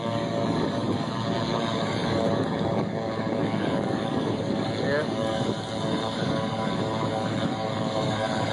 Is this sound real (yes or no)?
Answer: no